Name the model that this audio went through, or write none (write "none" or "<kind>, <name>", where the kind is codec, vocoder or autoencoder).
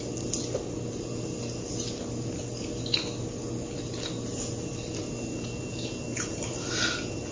none